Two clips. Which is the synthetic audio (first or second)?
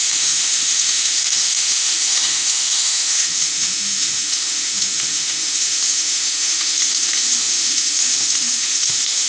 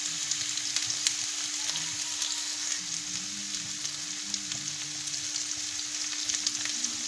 first